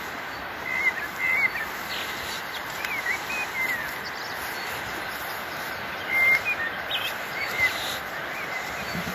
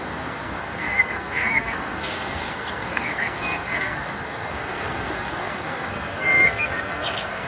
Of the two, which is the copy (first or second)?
second